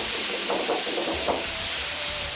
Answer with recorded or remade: remade